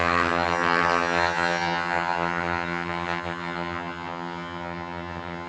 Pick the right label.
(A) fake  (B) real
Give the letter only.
A